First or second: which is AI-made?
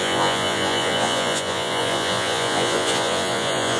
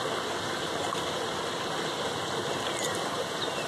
first